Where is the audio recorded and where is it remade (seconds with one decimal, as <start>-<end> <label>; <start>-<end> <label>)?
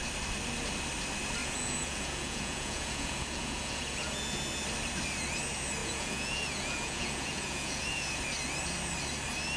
0.0-1.4 recorded; 1.4-4.2 remade; 4.2-5.8 recorded; 5.8-8.2 remade; 8.2-9.6 recorded